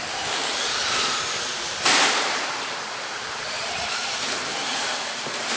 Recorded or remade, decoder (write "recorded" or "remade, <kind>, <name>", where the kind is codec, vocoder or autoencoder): remade, vocoder, BigVGAN v2